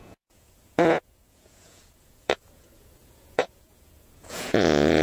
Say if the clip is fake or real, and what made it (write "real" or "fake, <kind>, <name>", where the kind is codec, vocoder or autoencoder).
fake, vocoder, Vocos